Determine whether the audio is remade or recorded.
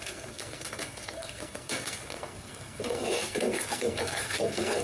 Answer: remade